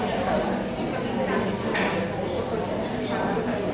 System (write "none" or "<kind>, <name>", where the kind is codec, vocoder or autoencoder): none